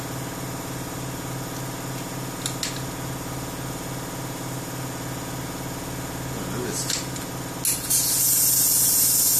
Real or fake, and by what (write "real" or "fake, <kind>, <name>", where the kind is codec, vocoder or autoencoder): real